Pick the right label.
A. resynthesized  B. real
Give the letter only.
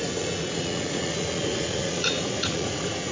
A